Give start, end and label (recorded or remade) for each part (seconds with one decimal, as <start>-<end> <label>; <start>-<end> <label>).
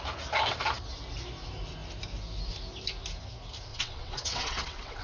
0.0-3.7 recorded; 3.7-5.0 remade